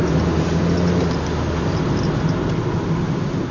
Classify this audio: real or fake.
real